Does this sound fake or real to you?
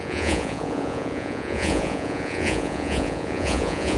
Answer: fake